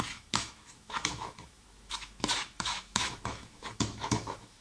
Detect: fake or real fake